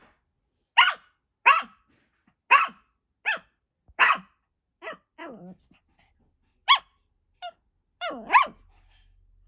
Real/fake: real